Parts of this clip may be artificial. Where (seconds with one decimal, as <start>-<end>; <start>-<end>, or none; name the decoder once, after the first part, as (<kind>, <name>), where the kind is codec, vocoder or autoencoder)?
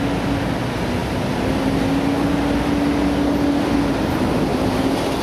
none